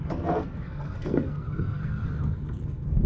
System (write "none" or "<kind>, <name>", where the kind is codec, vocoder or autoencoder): codec, SNAC